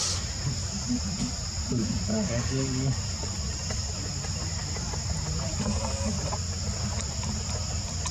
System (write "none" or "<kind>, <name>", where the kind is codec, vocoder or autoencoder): none